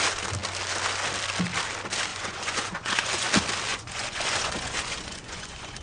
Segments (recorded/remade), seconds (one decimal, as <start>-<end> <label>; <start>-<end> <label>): 0.0-2.1 recorded; 2.1-3.3 remade; 3.3-3.7 recorded; 3.7-5.8 remade